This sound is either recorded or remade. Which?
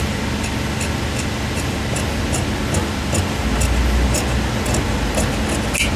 recorded